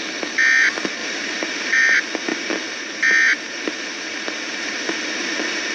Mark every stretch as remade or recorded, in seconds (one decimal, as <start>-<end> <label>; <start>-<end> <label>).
0.0-1.0 recorded; 1.0-1.8 remade; 1.8-5.7 recorded